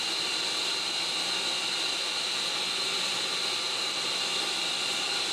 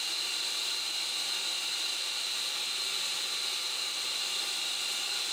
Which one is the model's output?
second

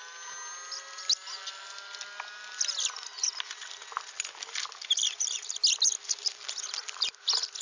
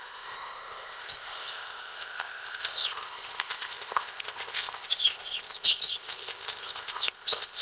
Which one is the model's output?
second